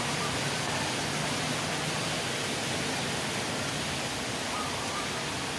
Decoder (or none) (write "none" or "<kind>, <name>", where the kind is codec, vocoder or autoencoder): none